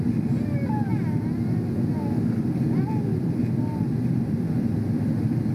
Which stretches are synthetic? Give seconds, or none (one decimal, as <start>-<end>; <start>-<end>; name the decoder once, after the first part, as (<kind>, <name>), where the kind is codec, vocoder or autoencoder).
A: none